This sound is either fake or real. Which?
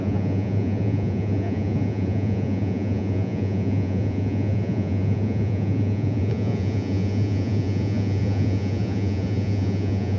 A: fake